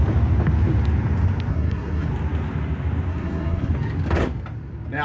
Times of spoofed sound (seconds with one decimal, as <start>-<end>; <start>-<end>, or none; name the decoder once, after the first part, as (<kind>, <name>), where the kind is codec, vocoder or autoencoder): 1.5-2.1 (codec, SNAC); 3.1-3.7